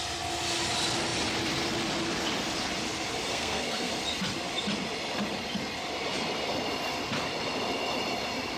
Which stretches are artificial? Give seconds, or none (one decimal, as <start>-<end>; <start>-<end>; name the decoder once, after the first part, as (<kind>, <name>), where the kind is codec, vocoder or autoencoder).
3.3-3.9 (codec, SNAC)